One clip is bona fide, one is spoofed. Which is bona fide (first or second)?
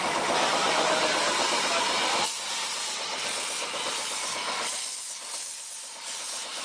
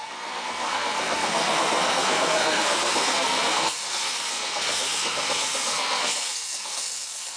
first